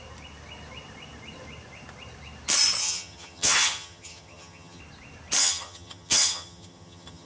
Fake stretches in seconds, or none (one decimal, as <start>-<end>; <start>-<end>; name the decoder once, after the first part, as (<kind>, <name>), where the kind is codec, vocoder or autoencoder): 2.8-4.8 (vocoder, HiFi-GAN); 5.4-7.3